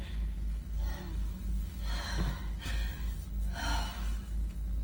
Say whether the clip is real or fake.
fake